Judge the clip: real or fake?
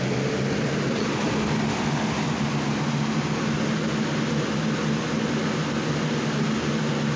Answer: real